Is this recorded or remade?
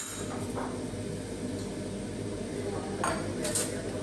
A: recorded